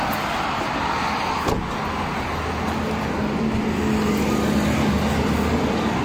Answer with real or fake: real